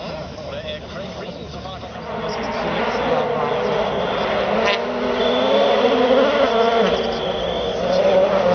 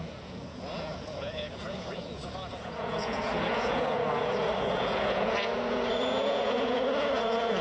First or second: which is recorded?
first